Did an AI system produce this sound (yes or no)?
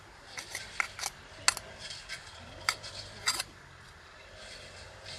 no